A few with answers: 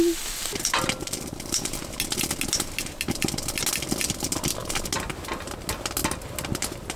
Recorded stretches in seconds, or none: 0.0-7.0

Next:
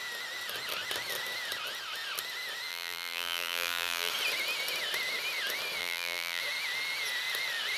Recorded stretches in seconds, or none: 0.0-2.7; 4.1-5.8; 6.4-7.8

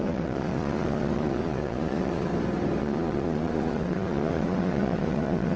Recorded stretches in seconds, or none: 2.3-2.8

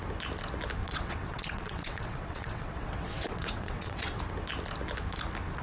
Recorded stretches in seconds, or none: 0.0-0.8; 4.2-5.6

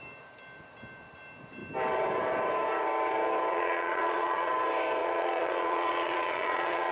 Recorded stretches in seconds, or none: 0.0-3.5; 4.5-5.0

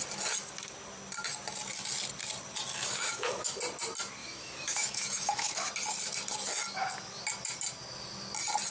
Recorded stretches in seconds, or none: 0.0-2.7; 3.6-4.2; 5.7-8.7